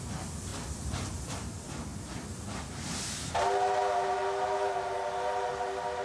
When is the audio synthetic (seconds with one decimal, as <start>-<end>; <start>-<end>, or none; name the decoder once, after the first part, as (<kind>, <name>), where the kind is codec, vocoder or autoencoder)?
none